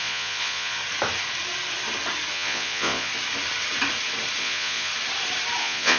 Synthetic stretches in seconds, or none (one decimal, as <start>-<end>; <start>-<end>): 0.0-0.8; 2.3-3.1; 4.4-4.9; 5.6-6.0